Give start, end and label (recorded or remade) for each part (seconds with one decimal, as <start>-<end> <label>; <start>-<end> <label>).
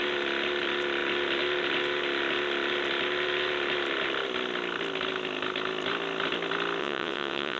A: 0.0-6.8 recorded; 6.8-7.6 remade